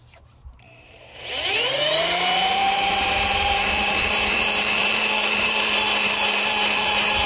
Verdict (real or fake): fake